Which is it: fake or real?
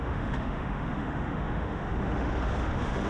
fake